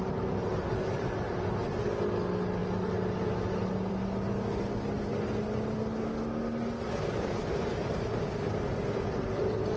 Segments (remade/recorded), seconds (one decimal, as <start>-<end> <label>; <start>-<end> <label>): 0.0-9.8 recorded